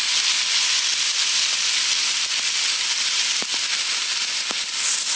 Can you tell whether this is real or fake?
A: real